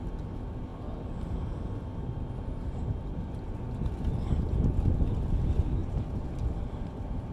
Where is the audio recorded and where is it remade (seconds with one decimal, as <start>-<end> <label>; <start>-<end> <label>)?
0.0-5.8 recorded; 5.8-7.3 remade

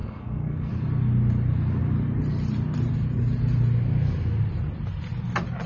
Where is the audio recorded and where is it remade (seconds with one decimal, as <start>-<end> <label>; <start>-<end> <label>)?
0.0-0.7 remade; 0.7-5.7 recorded